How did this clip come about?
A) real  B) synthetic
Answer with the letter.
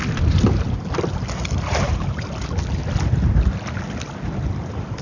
A